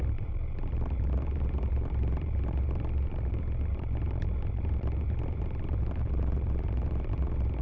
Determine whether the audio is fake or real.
fake